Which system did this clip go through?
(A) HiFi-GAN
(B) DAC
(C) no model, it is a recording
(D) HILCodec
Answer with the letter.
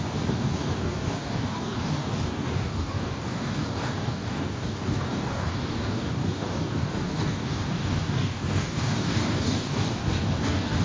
B